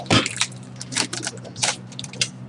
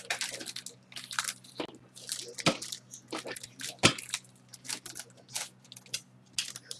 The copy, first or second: first